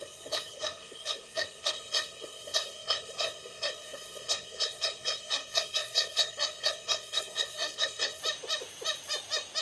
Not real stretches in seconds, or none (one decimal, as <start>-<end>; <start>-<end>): 0.0-8.2